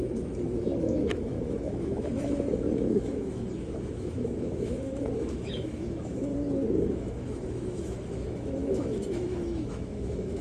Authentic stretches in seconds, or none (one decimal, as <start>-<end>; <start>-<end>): 6.3-6.9